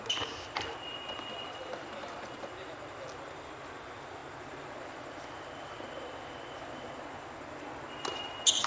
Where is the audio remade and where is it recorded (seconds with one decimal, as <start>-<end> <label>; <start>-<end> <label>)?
0.0-8.7 recorded